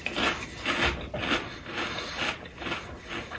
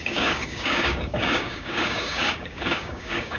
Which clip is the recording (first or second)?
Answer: first